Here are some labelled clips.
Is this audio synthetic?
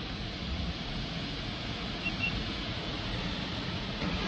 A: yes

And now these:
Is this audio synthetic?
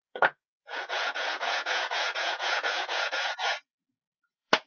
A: yes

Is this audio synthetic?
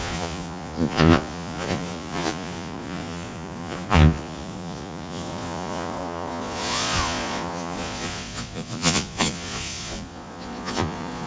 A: yes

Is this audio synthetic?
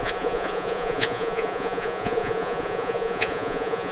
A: yes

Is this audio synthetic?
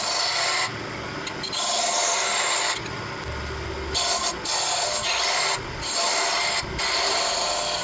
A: no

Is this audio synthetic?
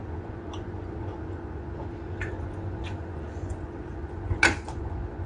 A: yes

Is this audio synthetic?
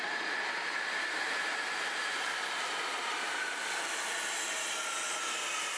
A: no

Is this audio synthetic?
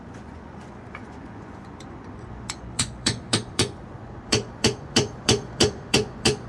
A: yes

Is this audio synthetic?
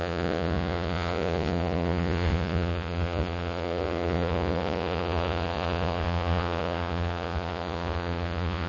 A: yes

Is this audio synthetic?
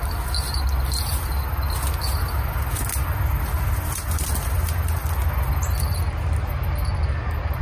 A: no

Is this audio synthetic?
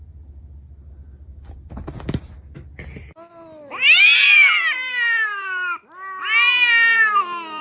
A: no